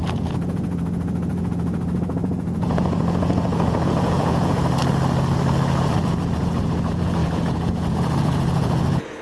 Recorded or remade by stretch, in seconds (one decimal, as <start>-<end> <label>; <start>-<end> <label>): 0.0-4.8 remade; 4.8-5.8 recorded; 5.8-9.2 remade